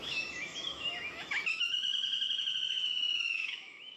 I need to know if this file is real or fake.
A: fake